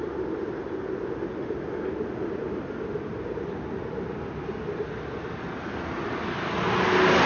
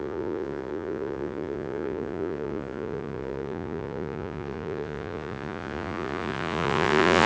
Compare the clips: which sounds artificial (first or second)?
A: second